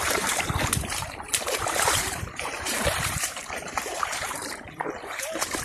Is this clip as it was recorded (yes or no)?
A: no